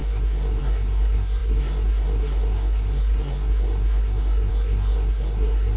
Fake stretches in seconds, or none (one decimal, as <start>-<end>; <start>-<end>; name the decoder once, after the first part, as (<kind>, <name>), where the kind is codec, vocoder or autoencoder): 0.0-5.8 (codec, SNAC)